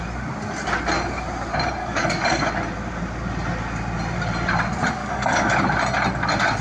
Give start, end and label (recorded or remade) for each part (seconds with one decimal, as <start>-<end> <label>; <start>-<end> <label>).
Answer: 0.0-1.8 recorded; 1.8-2.5 remade; 2.5-5.0 recorded; 5.0-5.6 remade; 5.6-6.6 recorded